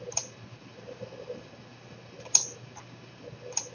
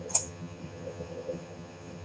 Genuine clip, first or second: first